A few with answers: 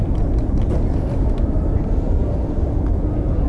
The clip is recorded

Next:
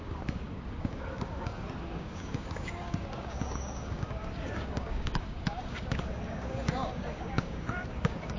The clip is remade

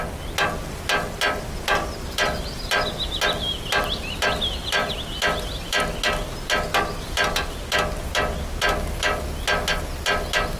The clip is recorded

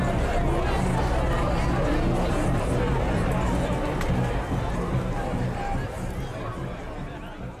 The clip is recorded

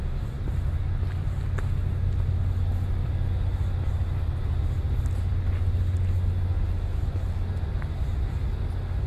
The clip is recorded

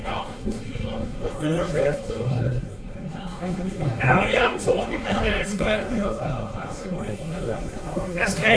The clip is remade